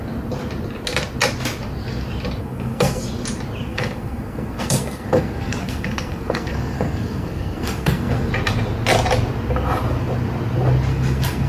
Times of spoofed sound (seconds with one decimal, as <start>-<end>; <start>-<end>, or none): 2.4-3.0; 3.7-8.3; 10.9-11.5